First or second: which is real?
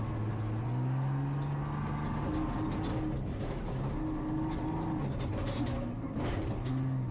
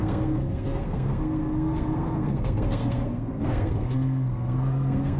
first